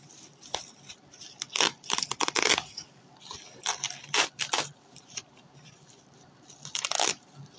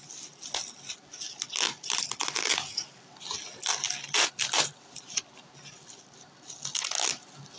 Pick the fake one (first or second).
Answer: first